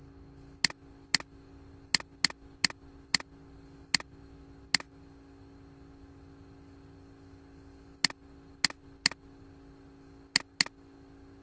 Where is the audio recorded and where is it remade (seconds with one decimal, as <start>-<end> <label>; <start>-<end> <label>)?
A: 0.0-11.4 recorded